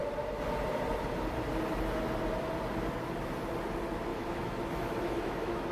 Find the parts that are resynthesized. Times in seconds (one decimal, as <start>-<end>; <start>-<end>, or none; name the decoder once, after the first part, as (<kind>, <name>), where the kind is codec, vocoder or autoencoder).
4.1-5.7 (autoencoder, DAC-VAE)